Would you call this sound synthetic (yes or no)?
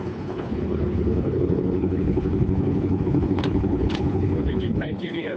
yes